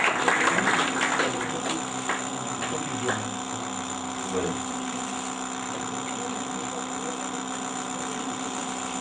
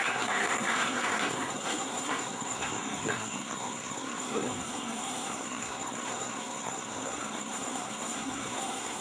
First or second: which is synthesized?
second